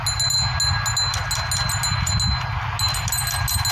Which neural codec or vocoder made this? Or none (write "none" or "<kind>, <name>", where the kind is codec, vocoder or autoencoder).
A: none